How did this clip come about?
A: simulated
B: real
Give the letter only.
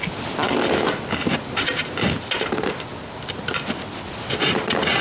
B